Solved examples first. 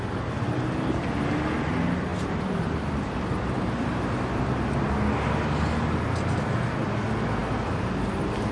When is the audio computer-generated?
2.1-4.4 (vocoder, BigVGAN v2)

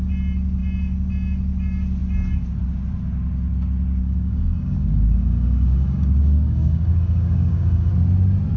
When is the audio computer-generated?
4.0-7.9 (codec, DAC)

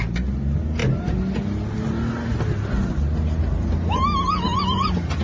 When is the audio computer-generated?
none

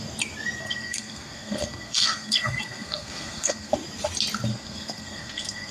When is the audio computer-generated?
0.6-3.7 (codec, SNAC); 4.5-5.7

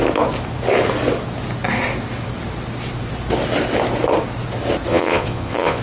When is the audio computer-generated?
4.9-5.8 (vocoder, Vocos)

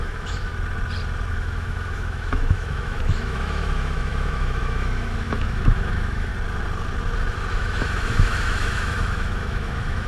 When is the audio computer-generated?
0.0-0.5 (autoencoder, DAC-VAE); 1.3-6.3; 7.5-10.1

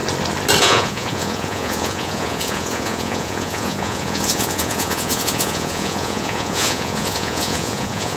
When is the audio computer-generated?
0.6-8.2 (vocoder, Vocos)